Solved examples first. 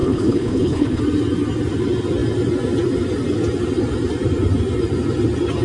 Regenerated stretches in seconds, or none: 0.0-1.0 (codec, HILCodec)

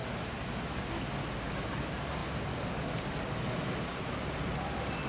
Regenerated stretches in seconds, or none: none

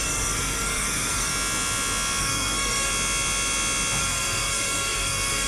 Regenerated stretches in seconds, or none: 0.0-1.3 (codec, SNAC); 2.2-2.9; 4.0-5.5

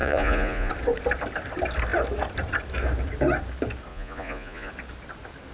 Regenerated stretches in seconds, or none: 0.0-0.7 (vocoder, Vocos); 3.9-4.7

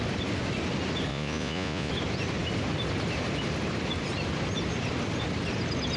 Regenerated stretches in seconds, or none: 1.1-1.9 (vocoder, Vocos)

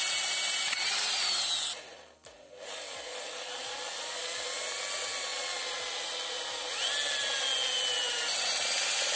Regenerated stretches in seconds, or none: none

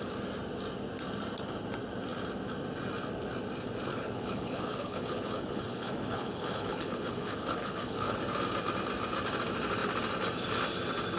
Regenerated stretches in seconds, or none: 3.9-8.2 (codec, HILCodec)

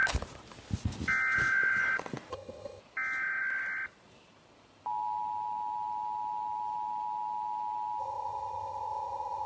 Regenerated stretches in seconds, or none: 2.3-2.8 (vocoder, HiFi-GAN); 8.0-9.5